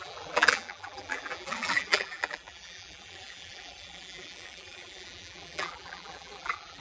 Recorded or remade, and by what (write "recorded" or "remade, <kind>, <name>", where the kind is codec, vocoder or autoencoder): remade, vocoder, BigVGAN v2